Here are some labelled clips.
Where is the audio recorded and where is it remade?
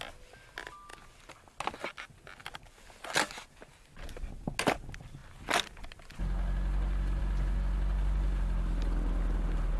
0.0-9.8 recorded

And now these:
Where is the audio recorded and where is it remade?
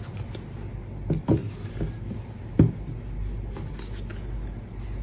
0.0-5.0 recorded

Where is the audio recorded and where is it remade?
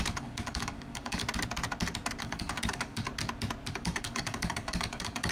0.0-1.2 remade; 1.2-2.2 recorded; 2.2-3.1 remade; 3.1-3.7 recorded; 3.7-5.3 remade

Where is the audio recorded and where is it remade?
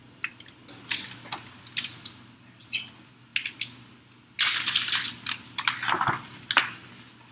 0.0-7.3 recorded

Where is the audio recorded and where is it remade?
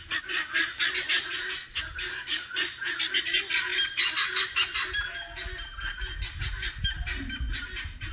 0.0-1.7 recorded; 1.7-2.5 remade; 2.5-8.1 recorded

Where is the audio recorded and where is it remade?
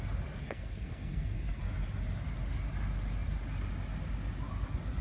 0.0-0.4 recorded; 0.4-1.6 remade; 1.6-5.0 recorded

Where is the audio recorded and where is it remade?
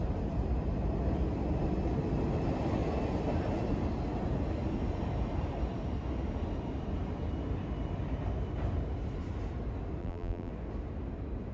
0.0-10.0 recorded; 10.0-10.5 remade; 10.5-11.5 recorded